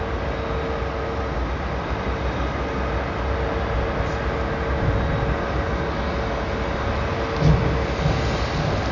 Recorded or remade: recorded